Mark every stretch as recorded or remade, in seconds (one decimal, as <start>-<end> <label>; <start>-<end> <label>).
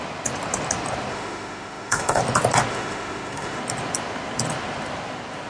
0.0-1.1 recorded; 1.1-2.2 remade; 2.2-2.7 recorded; 2.7-3.6 remade; 3.6-5.5 recorded